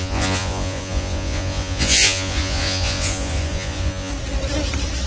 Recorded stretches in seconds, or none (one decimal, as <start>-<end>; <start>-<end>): 4.1-5.1